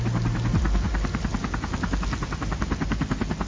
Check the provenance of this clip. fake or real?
real